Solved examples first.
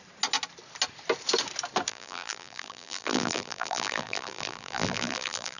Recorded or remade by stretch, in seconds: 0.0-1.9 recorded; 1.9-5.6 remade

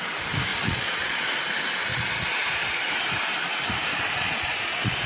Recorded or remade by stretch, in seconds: 0.0-0.5 recorded; 0.5-1.4 remade; 1.4-1.9 recorded; 1.9-2.9 remade; 2.9-3.9 recorded; 3.9-5.1 remade

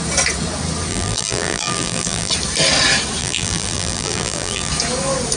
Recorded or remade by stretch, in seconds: 0.0-0.9 recorded; 0.9-2.3 remade; 2.3-3.2 recorded; 3.2-4.7 remade; 4.7-5.4 recorded

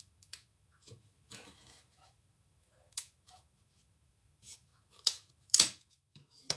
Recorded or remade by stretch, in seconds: 0.0-6.6 remade

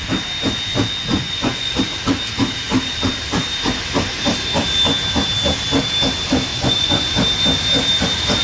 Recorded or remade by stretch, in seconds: 0.0-1.1 recorded; 1.1-1.8 remade; 1.8-6.5 recorded; 6.5-7.1 remade; 7.1-8.4 recorded

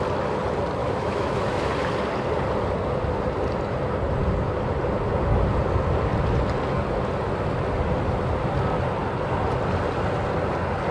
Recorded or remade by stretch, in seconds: 0.0-0.8 recorded; 0.8-1.7 remade; 1.7-10.9 recorded

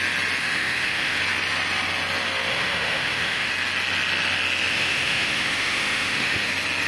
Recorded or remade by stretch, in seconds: 0.0-0.4 recorded; 0.4-1.2 remade; 1.2-2.5 recorded; 2.5-3.5 remade; 3.5-4.7 recorded; 4.7-6.5 remade; 6.5-6.9 recorded